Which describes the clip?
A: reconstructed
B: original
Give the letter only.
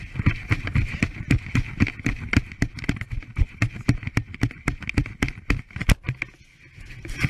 B